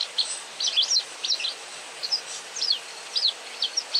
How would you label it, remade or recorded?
recorded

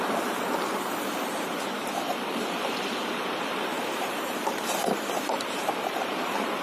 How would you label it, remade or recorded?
remade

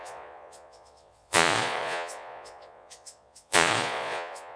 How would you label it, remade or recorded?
remade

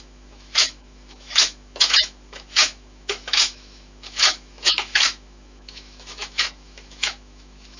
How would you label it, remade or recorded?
remade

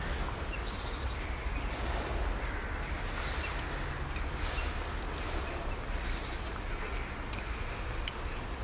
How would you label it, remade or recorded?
recorded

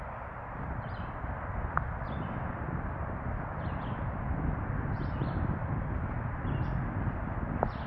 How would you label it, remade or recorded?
recorded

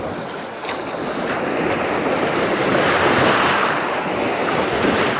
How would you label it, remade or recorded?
recorded